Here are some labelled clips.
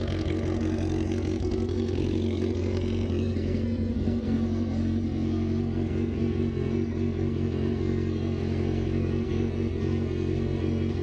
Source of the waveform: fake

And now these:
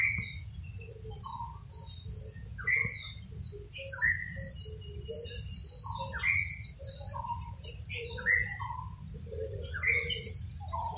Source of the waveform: real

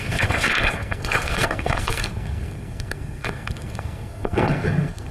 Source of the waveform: fake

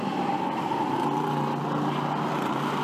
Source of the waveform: real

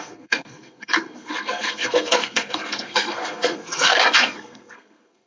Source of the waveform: fake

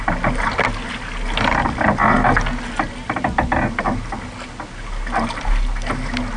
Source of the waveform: real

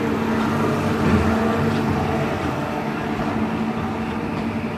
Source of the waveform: real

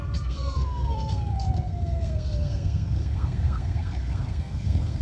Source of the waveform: fake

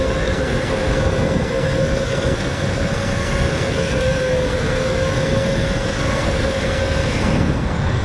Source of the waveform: fake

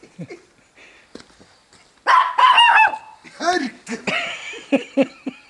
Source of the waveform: real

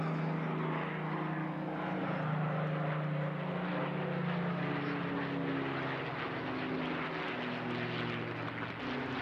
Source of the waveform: real